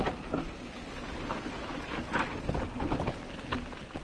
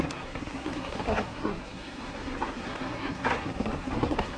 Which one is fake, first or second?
second